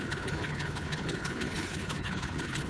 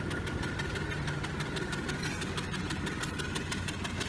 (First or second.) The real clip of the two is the second